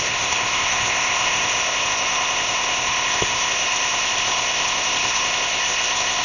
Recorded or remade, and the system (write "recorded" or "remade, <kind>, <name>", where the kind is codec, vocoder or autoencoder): remade, codec, ZipCodec